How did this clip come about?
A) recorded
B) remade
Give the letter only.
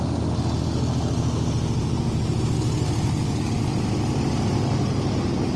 A